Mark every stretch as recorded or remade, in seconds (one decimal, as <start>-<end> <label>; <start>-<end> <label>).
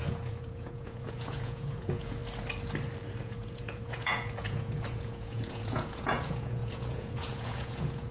0.0-2.2 remade; 2.2-3.2 recorded; 3.2-8.1 remade